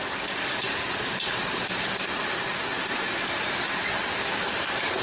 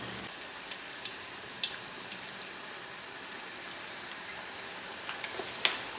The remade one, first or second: first